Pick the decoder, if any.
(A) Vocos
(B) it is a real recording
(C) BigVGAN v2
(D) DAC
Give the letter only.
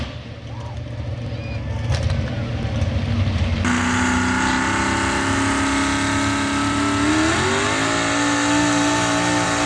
B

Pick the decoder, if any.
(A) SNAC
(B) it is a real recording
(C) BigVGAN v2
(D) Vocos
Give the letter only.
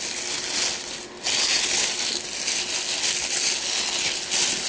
B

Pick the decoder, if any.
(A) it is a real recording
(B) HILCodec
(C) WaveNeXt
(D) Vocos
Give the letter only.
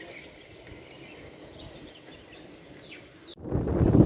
A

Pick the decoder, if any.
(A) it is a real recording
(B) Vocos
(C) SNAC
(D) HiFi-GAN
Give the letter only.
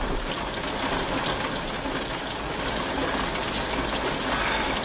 A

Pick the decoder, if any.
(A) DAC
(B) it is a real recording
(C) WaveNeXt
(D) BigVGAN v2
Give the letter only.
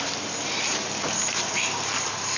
D